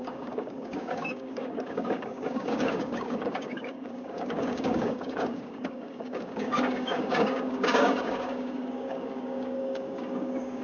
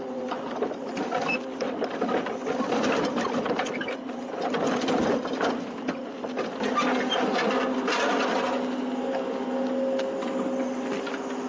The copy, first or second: first